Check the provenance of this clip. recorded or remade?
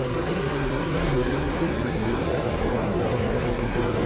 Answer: remade